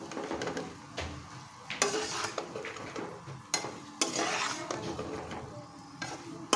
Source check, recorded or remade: recorded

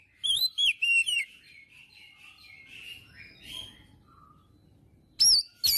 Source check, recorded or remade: recorded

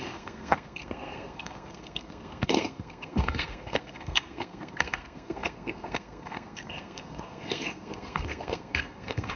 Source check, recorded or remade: remade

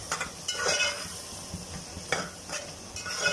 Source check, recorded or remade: recorded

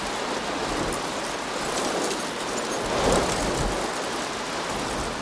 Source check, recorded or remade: recorded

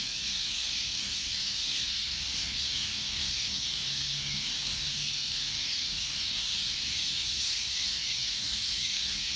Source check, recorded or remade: remade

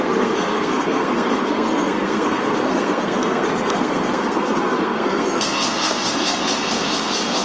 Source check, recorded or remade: remade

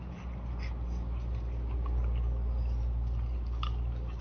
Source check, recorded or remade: recorded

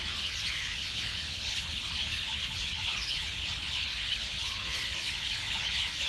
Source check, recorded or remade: remade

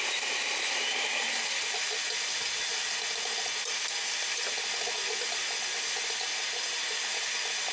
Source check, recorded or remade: recorded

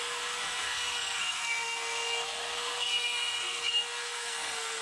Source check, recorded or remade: remade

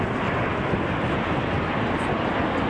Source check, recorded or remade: recorded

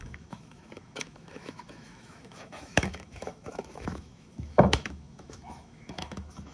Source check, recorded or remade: remade